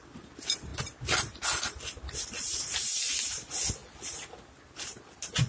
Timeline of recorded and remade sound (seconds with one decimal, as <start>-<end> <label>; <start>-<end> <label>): 0.0-5.5 recorded